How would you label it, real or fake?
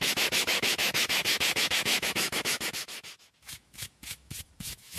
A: fake